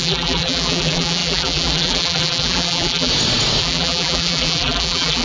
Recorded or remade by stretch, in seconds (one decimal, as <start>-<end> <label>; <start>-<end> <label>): 0.0-3.1 remade; 3.1-3.6 recorded; 3.6-5.2 remade